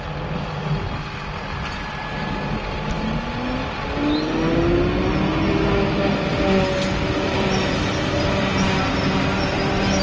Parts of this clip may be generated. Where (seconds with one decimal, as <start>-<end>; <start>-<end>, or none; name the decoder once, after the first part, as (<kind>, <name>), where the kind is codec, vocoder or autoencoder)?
none